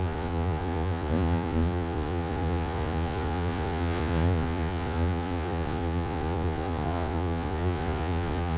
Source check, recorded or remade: remade